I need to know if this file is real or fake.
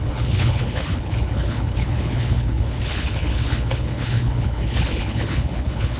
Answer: fake